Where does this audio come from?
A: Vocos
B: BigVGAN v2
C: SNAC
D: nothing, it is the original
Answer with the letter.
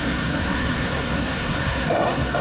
C